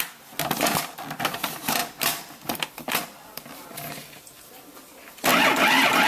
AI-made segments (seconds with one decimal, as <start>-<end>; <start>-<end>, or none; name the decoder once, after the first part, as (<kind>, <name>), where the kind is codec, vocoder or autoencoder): 1.8-3.4 (vocoder, BigVGAN v2)